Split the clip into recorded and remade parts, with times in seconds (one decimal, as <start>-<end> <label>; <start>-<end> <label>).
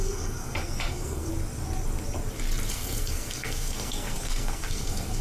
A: 0.0-1.3 remade; 1.3-2.7 recorded; 2.7-5.2 remade